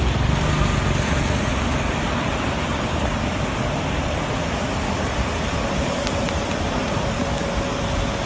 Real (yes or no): yes